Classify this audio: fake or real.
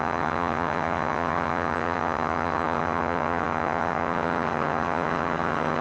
fake